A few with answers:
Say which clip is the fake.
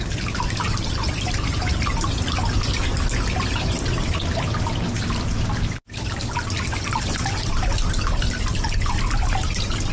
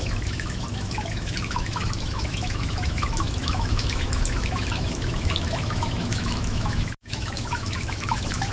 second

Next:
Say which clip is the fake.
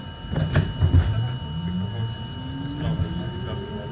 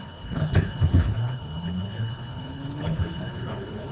second